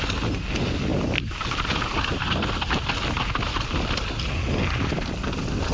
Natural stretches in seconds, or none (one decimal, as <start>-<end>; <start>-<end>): 0.0-5.7